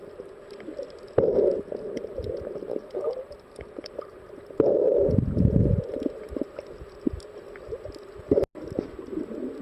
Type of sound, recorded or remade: recorded